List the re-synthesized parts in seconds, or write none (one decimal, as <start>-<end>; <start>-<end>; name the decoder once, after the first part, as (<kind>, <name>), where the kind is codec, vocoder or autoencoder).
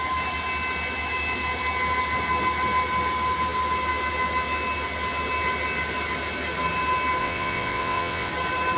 7.2-8.3 (vocoder, WaveNeXt)